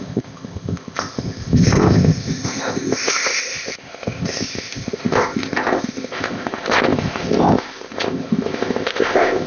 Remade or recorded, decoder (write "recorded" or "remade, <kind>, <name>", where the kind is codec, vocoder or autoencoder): remade, codec, ZipCodec